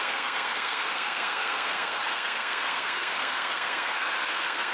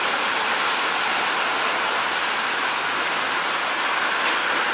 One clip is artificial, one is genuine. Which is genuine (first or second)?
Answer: second